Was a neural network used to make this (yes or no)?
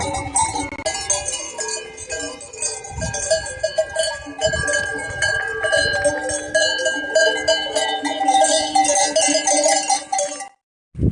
no